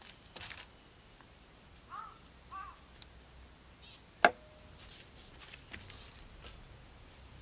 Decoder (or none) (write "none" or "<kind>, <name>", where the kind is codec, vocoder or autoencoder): none